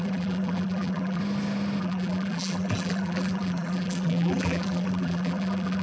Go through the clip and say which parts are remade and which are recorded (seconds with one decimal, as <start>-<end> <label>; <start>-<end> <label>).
0.0-1.2 remade; 1.2-1.8 recorded; 1.8-5.8 remade